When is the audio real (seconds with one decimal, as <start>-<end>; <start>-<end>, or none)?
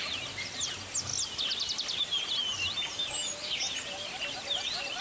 0.0-5.0